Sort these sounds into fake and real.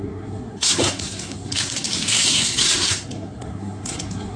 fake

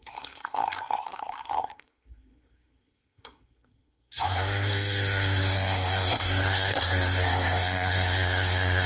fake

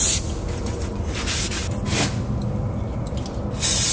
real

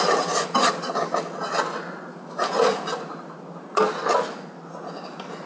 real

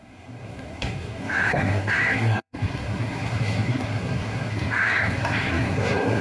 fake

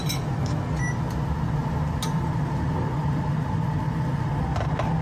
real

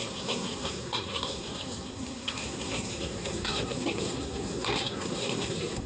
fake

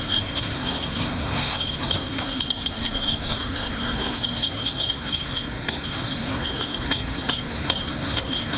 fake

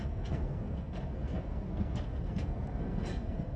fake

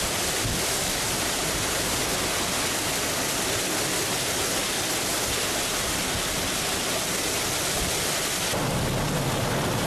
real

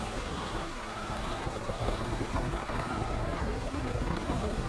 fake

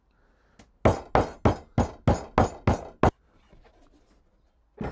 real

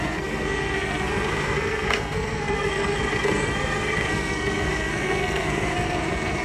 fake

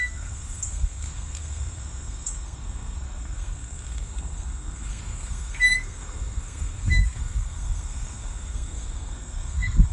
fake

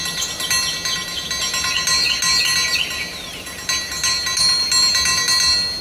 real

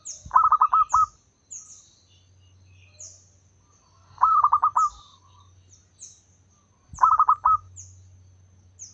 real